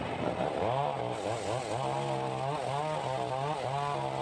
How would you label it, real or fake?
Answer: real